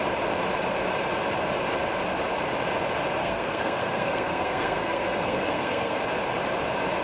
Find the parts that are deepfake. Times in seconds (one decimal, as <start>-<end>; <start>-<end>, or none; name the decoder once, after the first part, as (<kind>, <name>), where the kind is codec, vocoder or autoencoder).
3.2-6.0 (codec, SNAC)